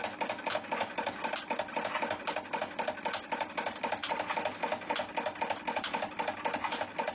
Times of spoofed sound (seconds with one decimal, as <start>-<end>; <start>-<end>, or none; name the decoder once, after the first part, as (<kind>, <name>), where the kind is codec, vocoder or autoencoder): none